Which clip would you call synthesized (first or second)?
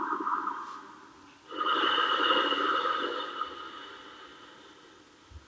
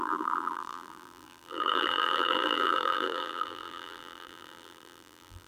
second